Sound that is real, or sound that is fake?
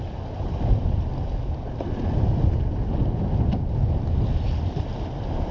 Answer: real